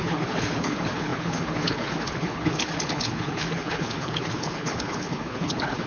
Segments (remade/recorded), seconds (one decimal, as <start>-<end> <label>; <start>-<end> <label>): 0.0-5.9 remade